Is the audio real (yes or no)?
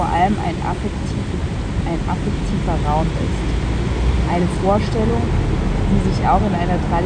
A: yes